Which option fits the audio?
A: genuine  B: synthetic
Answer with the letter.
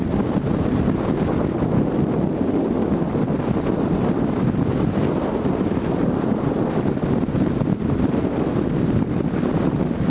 B